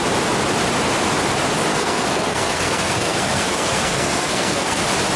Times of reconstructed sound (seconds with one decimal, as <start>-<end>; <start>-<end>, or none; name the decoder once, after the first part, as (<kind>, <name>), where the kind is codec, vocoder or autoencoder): 1.7-4.8 (codec, SNAC)